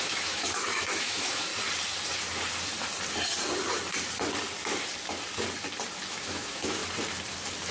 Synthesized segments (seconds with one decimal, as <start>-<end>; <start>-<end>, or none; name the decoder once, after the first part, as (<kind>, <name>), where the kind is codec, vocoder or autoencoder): 0.0-1.5 (autoencoder, DAC-VAE); 6.1-6.8